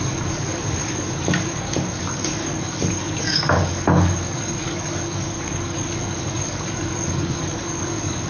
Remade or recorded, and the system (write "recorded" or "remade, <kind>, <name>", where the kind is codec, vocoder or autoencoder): remade, codec, DAC